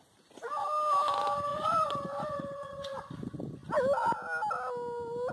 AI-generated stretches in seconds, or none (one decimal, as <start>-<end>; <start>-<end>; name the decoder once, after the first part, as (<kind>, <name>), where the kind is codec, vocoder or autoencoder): 1.5-3.1 (vocoder, Vocos)